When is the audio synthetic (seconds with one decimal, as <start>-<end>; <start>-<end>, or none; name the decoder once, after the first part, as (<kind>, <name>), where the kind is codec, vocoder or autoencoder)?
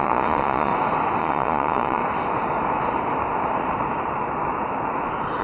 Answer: 0.0-0.7 (vocoder, Vocos); 1.2-2.0